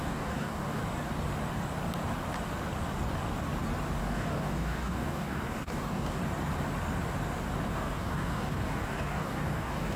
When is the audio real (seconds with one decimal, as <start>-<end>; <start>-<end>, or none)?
0.8-4.0; 6.2-7.7